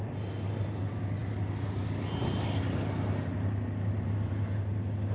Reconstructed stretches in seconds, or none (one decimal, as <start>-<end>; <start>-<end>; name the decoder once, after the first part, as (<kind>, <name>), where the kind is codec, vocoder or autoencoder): none